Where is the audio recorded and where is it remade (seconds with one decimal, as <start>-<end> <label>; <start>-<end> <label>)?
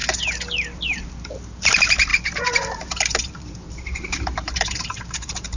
0.0-2.1 recorded; 2.1-5.6 remade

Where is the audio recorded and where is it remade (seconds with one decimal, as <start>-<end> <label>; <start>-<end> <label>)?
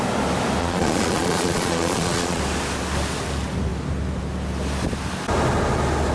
0.0-0.6 recorded; 0.6-2.4 remade; 2.4-6.1 recorded